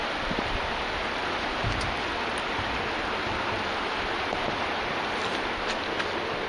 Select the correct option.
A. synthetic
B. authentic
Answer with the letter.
A